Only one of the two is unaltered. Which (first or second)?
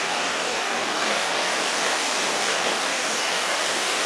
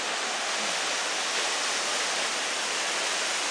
second